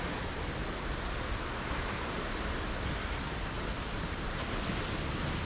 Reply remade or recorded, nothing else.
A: recorded